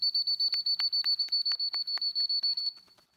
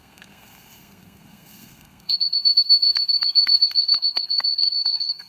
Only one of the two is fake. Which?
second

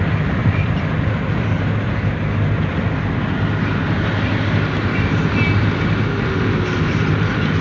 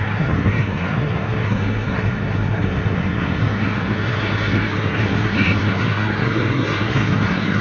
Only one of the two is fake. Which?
second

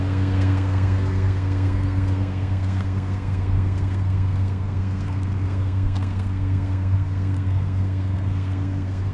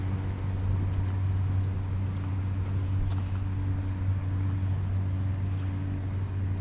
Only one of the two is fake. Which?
first